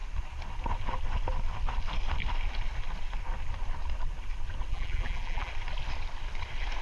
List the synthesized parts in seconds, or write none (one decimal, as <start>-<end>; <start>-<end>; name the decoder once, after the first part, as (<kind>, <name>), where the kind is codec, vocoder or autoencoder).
4.7-5.5 (vocoder, BigVGAN v2)

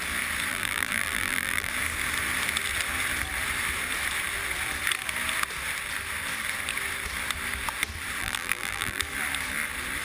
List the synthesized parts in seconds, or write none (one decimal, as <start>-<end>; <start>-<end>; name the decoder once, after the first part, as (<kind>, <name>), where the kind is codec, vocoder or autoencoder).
0.5-1.7 (vocoder, BigVGAN v2); 8.2-9.0

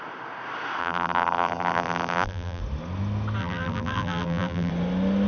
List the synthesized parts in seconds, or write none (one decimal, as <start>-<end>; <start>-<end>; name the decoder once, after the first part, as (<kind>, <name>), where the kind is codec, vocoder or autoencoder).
0.8-2.6 (vocoder, BigVGAN v2); 3.4-4.7

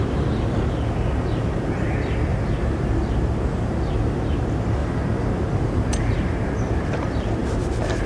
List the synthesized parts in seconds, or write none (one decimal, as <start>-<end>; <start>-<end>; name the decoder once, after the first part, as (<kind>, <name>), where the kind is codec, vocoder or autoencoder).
2.3-3.9 (vocoder, BigVGAN v2); 4.8-6.8

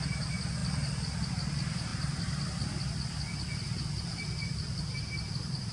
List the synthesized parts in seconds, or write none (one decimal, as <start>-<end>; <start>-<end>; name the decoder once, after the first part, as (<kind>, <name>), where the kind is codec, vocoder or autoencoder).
none

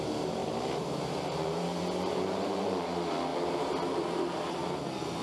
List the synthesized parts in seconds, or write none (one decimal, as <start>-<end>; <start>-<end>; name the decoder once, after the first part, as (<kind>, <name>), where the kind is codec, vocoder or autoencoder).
0.4-2.8 (vocoder, BigVGAN v2); 3.3-4.5

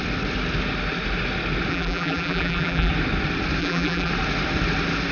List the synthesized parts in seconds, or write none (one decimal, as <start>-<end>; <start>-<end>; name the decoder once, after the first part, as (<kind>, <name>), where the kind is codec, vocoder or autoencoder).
1.7-2.9 (vocoder, BigVGAN v2); 3.6-4.1